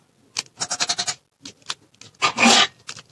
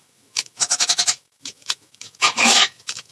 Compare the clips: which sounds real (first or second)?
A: first